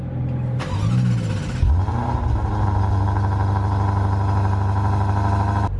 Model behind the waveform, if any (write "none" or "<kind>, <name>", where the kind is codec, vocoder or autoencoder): none